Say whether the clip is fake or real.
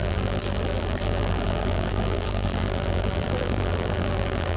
fake